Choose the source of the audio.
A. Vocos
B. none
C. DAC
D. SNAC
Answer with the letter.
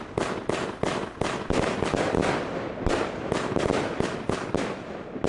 B